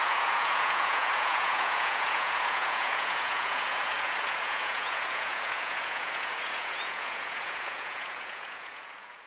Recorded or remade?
remade